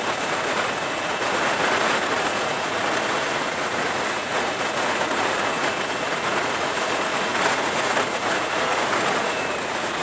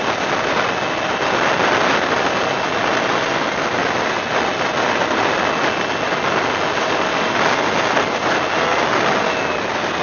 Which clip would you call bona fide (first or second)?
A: second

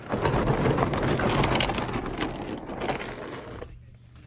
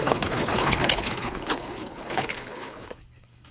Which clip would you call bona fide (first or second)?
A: first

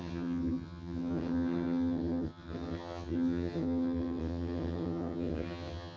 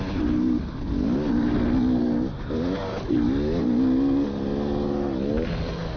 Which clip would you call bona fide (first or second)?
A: second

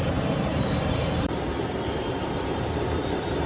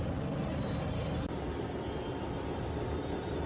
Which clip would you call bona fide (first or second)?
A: second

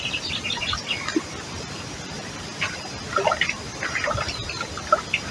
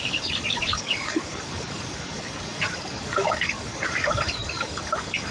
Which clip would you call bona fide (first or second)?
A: first